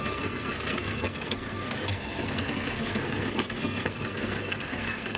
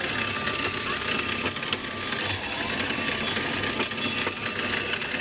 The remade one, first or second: first